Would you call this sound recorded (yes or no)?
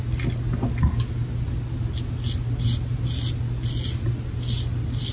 yes